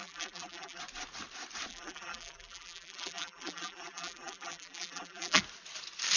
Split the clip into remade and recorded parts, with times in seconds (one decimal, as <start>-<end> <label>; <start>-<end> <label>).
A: 0.0-0.8 remade; 0.8-1.7 recorded; 1.7-5.4 remade; 5.4-6.2 recorded